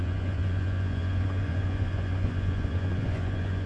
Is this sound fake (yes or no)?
yes